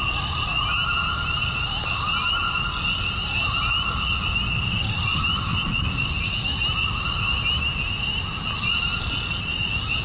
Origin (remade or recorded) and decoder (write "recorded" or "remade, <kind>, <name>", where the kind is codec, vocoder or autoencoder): recorded